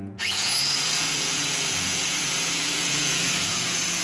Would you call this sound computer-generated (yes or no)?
yes